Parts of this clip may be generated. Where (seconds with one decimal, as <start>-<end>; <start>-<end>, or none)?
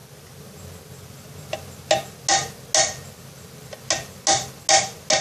none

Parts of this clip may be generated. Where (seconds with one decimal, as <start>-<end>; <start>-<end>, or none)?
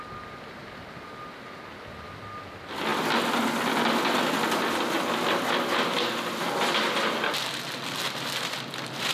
none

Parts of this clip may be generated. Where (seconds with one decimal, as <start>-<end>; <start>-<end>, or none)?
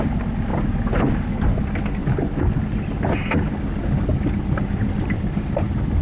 none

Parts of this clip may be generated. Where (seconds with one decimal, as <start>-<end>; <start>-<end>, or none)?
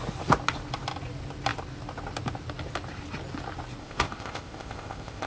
3.8-5.3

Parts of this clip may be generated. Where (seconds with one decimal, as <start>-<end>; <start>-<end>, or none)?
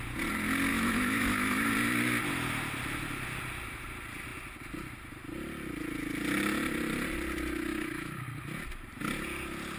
0.7-1.7; 7.7-8.2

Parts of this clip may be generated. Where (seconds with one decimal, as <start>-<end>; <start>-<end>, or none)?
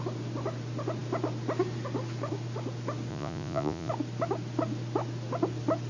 3.1-3.9